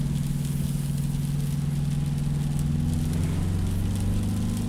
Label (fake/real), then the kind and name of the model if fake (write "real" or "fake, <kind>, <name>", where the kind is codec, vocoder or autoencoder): real